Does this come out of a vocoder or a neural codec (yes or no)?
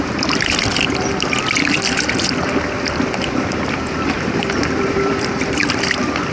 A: yes